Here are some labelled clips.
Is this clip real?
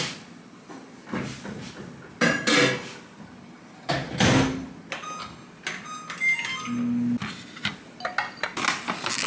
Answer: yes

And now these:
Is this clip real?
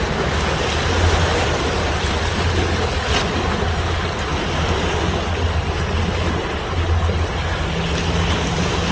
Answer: yes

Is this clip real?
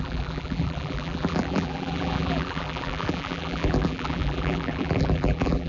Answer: no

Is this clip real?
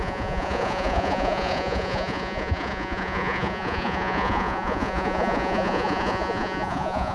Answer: no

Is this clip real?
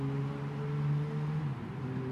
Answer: yes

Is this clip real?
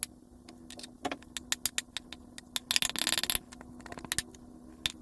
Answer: yes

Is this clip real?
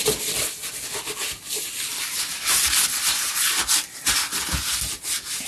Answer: yes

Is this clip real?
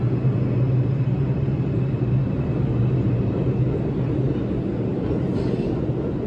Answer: yes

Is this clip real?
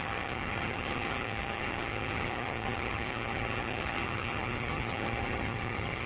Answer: no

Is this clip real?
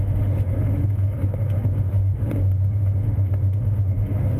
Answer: no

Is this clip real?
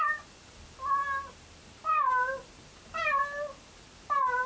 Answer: yes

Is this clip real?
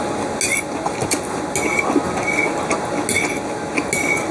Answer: yes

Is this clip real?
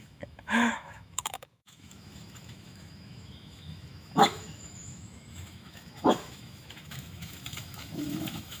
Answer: no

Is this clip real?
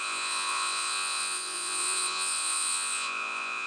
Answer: no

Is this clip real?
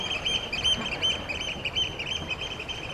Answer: yes